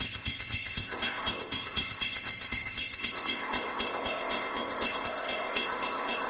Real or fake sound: fake